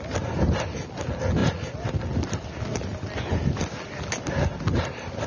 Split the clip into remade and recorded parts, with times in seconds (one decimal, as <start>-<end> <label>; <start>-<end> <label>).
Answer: 0.0-5.3 recorded